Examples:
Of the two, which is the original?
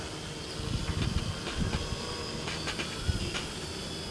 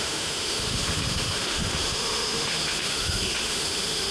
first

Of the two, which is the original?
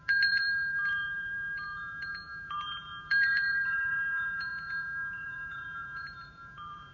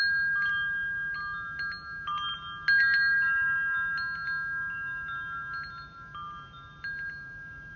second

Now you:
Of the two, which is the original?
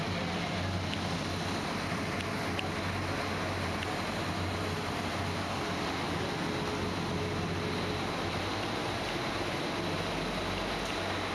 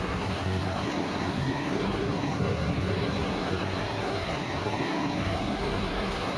first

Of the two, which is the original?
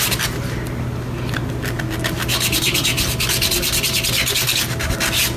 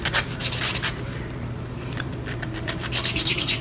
first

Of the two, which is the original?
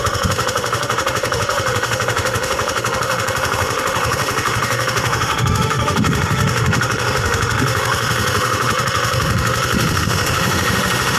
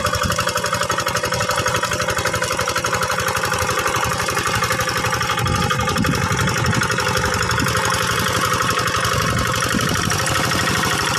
second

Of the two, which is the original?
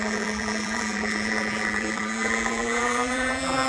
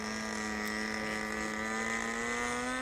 second